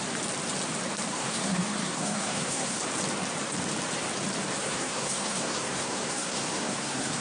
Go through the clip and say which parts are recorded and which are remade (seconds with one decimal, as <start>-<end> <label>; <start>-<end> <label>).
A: 0.0-1.1 recorded; 1.1-2.8 remade; 2.8-4.6 recorded; 4.6-7.2 remade